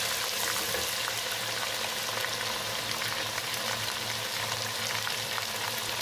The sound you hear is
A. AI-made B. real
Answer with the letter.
B